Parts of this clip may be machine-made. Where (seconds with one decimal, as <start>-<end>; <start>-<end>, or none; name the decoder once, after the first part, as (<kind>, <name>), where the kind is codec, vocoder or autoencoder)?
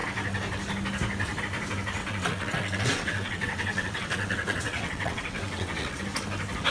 2.0-6.0 (vocoder, WaveNeXt)